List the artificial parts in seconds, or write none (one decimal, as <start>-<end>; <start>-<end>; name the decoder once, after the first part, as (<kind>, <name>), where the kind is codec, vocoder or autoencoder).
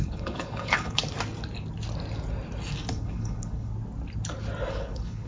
0.0-1.0 (codec, HILCodec); 2.9-3.7; 4.7-5.3